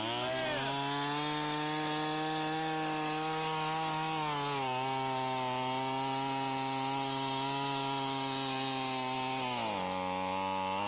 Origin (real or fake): real